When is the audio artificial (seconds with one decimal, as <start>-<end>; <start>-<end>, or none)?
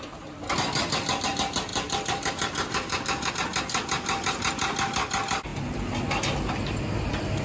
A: 1.7-3.3